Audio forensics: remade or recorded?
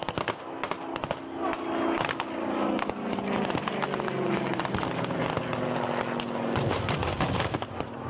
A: recorded